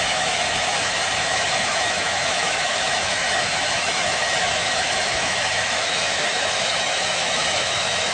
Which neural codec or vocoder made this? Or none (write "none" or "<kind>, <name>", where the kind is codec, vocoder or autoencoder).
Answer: autoencoder, DAC-VAE